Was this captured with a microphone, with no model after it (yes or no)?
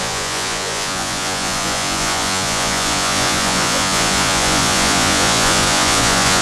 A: no